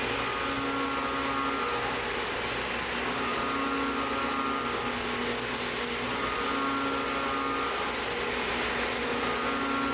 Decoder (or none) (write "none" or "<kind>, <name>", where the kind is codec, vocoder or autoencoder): none